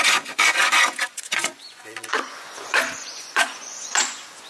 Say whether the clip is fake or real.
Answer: fake